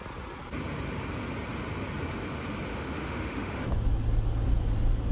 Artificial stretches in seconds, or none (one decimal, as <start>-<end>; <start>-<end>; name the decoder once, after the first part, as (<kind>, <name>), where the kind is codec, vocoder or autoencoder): 2.7-3.7 (autoencoder, DAC-VAE)